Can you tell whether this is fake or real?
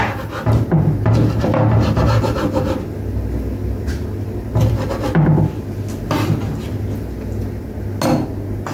real